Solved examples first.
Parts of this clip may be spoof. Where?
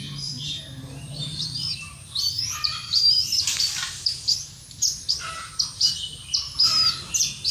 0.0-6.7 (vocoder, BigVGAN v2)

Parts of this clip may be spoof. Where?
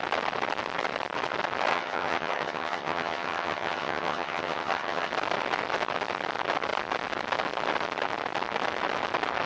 1.7-5.1 (vocoder, HiFi-GAN)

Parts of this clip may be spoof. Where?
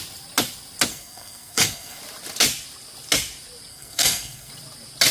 0.9-2.0 (codec, SNAC); 3.7-4.5